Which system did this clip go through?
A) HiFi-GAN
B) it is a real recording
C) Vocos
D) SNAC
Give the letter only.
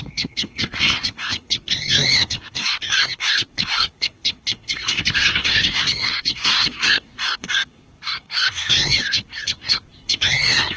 D